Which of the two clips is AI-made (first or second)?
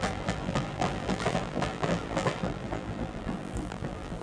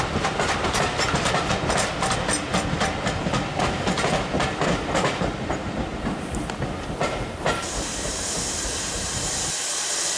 first